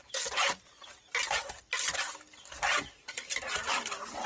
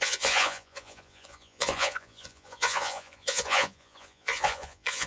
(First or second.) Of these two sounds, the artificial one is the second